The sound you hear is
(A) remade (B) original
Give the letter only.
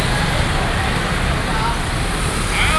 B